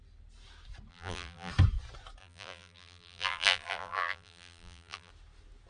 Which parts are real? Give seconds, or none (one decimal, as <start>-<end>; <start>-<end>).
0.0-0.9; 1.5-2.2; 5.1-5.7